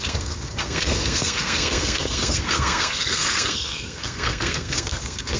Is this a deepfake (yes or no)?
yes